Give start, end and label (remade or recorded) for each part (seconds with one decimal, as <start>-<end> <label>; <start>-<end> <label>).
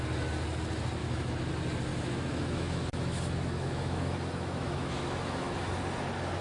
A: 0.0-1.0 recorded; 1.0-1.5 remade; 1.5-1.9 recorded; 1.9-5.7 remade; 5.7-6.4 recorded